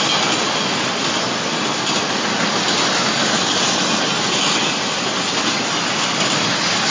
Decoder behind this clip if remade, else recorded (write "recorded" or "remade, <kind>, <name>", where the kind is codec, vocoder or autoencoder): recorded